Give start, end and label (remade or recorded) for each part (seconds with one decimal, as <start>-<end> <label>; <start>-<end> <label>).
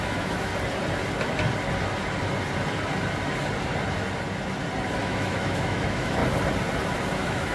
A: 0.0-0.5 remade; 0.5-5.0 recorded; 5.0-6.2 remade; 6.2-7.1 recorded; 7.1-7.5 remade